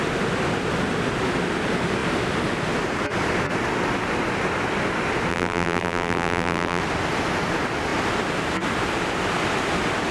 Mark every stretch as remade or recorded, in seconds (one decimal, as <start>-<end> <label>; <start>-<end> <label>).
0.0-5.3 recorded; 5.3-6.8 remade; 6.8-10.1 recorded